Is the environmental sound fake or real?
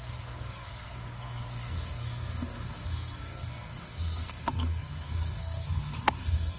fake